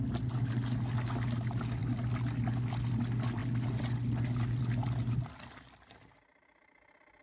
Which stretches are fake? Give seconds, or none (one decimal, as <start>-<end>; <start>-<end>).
none